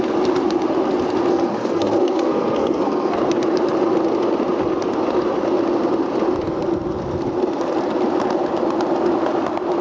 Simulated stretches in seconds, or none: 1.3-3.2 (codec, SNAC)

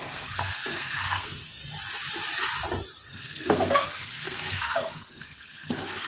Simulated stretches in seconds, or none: 0.0-1.6 (codec, SNAC); 3.1-6.1

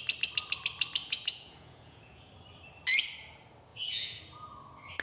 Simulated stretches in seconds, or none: 1.0-2.3 (vocoder, Vocos); 3.7-4.2

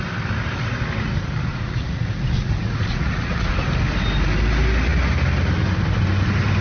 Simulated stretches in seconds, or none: 1.5-3.5 (vocoder, Vocos)

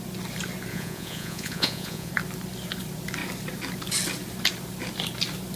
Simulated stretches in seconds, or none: 0.7-2.1 (vocoder, Vocos)